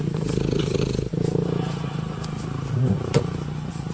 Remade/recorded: recorded